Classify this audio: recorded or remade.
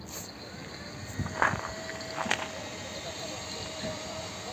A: recorded